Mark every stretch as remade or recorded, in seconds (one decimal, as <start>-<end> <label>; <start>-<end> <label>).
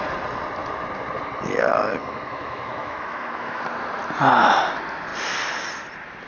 0.0-2.0 recorded; 2.0-3.6 remade; 3.6-6.3 recorded